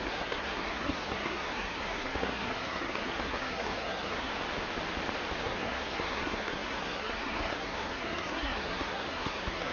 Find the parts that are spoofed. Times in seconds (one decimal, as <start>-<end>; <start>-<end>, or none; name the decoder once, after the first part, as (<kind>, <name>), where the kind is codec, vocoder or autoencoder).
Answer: 0.0-4.3 (codec, SNAC); 5.4-9.7